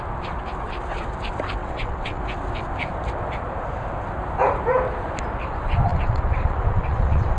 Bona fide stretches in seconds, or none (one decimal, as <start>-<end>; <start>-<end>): 0.0-1.6; 2.2-5.9